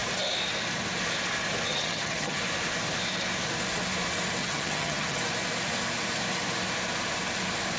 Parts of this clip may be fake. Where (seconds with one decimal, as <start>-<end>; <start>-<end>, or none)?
1.7-2.4; 4.4-5.2